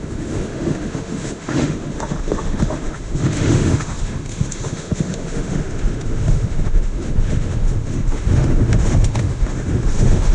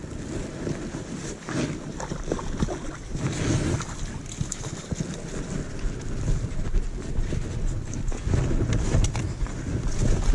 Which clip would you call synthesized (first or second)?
first